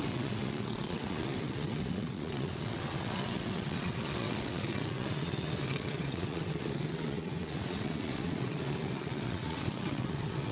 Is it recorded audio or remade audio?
remade